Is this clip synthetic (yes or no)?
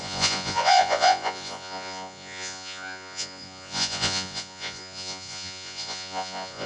yes